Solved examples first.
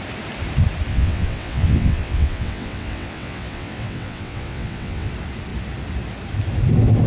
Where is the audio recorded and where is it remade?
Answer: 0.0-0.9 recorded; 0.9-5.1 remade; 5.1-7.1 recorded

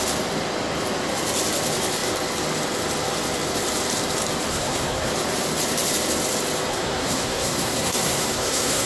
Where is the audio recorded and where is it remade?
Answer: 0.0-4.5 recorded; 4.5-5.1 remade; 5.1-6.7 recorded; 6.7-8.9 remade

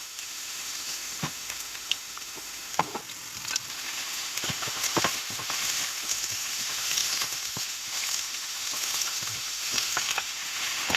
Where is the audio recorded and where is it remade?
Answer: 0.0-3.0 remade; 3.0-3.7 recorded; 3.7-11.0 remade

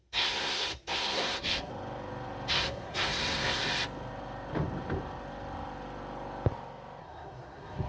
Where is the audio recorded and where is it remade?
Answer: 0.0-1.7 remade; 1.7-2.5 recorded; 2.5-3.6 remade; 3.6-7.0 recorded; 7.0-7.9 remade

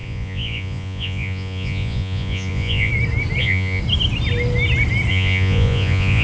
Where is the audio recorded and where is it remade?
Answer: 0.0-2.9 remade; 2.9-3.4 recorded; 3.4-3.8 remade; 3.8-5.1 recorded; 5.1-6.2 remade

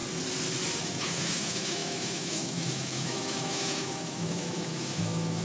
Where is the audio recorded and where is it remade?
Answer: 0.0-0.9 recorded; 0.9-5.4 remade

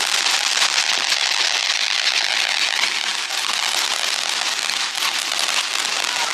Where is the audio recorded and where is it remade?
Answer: 0.0-6.3 recorded

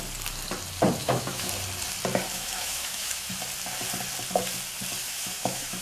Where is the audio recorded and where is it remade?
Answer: 0.0-1.0 recorded; 1.0-1.5 remade; 1.5-2.3 recorded; 2.3-3.3 remade; 3.3-5.0 recorded; 5.0-5.8 remade